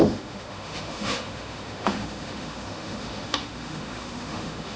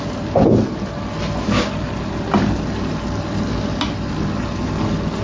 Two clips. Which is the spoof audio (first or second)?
first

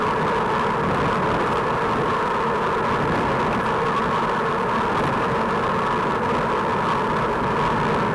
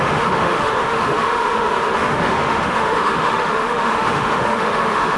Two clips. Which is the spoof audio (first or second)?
second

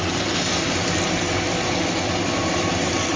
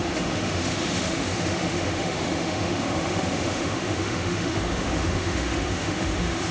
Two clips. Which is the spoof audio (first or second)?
second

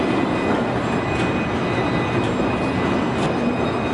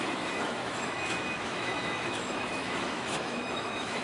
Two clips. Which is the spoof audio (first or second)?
second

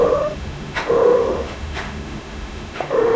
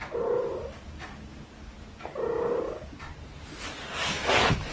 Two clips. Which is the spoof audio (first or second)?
first